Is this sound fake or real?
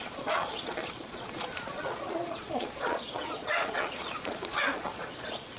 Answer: fake